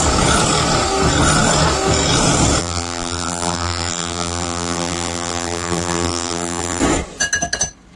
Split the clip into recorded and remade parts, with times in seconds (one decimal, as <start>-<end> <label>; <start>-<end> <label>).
0.0-2.6 recorded; 2.6-6.8 remade; 6.8-8.0 recorded